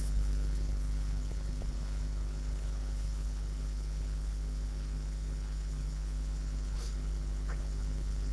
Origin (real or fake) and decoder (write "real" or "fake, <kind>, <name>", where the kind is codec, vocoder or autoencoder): fake, codec, HILCodec